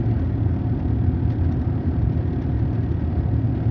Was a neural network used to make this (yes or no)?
no